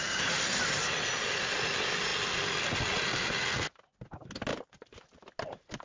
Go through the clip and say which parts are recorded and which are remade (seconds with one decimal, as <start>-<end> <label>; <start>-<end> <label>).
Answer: 0.0-5.8 recorded